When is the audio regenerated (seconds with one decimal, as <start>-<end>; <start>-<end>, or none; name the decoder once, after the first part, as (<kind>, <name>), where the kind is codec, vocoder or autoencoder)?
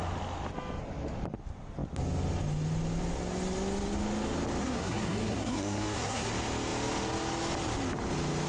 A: 4.6-6.3 (codec, SNAC)